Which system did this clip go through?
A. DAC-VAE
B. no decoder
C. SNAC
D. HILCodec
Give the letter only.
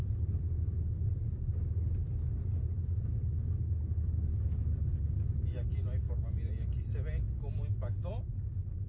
B